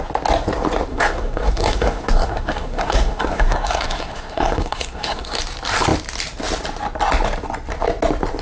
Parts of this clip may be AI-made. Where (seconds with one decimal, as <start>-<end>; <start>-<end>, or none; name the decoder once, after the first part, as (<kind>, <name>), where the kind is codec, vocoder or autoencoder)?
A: 0.9-5.4 (codec, SNAC)